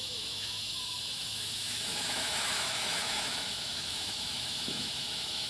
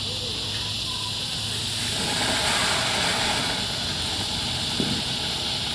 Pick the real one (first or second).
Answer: second